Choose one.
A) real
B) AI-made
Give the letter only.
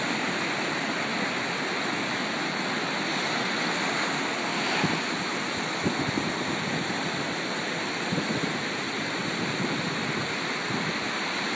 A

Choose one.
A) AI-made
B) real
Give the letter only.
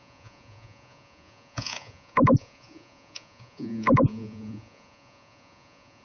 A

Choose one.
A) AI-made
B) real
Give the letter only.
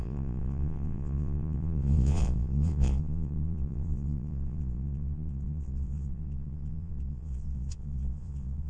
A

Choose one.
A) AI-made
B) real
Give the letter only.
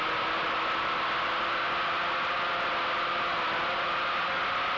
B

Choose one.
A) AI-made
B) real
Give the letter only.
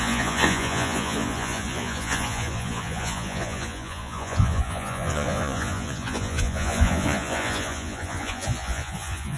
A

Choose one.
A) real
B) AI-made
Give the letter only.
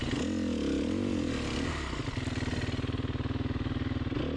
A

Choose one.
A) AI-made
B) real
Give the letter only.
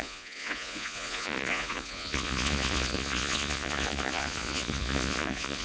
A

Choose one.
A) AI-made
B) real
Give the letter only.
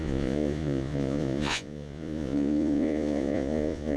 A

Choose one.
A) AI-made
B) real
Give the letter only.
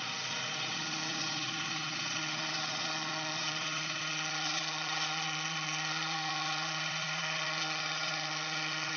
A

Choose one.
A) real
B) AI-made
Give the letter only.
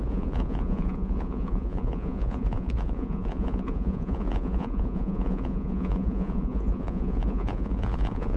B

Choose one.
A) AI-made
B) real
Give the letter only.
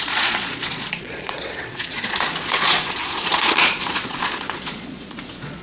A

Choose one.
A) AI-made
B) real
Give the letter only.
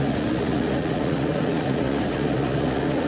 A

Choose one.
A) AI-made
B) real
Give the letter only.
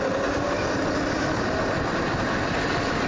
B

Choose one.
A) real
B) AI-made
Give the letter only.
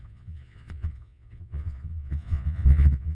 B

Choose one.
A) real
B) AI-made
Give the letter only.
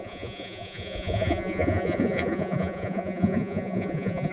B